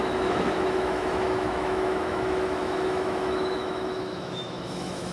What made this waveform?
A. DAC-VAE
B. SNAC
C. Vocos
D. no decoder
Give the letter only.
A